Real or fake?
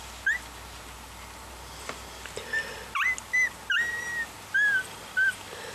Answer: real